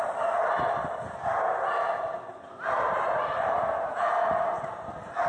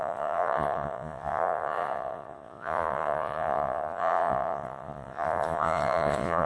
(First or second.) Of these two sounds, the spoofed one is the second